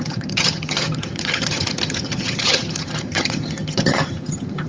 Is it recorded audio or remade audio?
remade